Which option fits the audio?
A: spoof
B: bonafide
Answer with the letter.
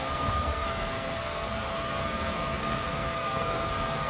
A